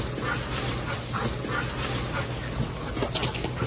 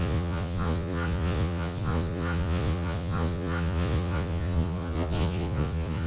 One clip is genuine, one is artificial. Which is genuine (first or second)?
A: first